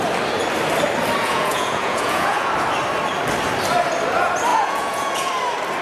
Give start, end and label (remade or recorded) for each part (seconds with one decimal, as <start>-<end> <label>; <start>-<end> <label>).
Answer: 0.0-1.2 recorded; 1.2-2.5 remade; 2.5-4.5 recorded; 4.5-5.3 remade; 5.3-5.8 recorded